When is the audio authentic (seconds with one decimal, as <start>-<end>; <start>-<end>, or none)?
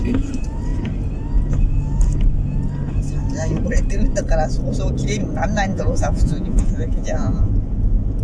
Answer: 0.0-5.7; 7.5-8.2